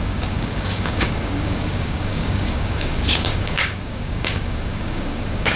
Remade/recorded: remade